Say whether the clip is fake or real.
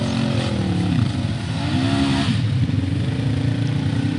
real